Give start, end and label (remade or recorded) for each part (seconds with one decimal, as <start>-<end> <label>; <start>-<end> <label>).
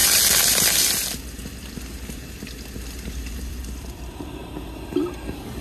0.0-3.4 recorded; 3.4-4.4 remade; 4.4-5.6 recorded